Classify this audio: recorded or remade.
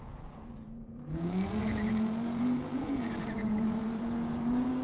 remade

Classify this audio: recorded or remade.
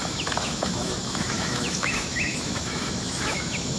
remade